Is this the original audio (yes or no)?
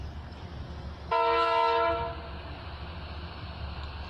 yes